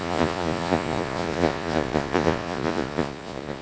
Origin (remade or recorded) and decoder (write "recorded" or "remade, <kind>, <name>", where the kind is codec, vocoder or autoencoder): remade, vocoder, Vocos